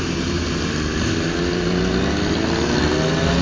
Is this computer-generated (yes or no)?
no